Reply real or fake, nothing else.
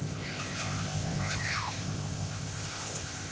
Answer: fake